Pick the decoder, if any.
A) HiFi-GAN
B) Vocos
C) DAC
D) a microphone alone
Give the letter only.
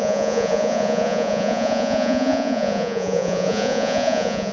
B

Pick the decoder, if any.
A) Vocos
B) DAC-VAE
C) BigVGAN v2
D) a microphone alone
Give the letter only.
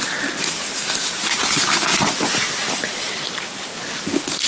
D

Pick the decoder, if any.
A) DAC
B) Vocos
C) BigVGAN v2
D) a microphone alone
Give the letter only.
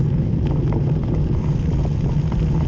D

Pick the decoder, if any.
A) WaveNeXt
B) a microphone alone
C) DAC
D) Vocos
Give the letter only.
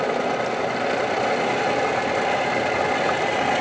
B